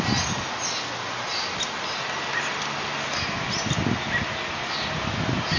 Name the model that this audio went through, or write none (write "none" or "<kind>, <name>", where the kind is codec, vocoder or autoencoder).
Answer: none